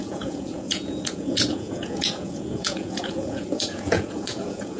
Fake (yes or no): yes